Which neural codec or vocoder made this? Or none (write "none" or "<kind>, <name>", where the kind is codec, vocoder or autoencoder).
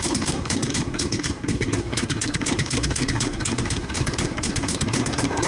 codec, SNAC